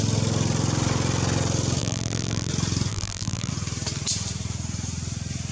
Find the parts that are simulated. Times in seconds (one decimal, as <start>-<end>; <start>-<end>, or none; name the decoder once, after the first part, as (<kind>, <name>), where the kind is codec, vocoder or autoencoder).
1.8-2.5 (vocoder, BigVGAN v2); 2.9-3.5